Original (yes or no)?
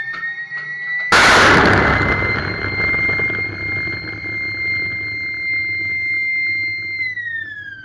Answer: yes